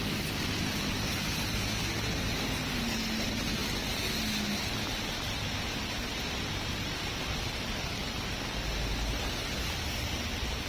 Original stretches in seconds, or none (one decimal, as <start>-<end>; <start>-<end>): 0.0-10.7